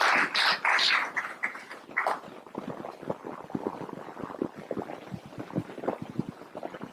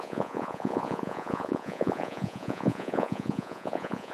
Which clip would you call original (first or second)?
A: first